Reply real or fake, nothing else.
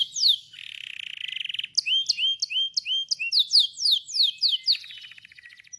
real